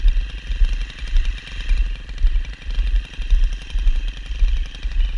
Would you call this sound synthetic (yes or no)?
no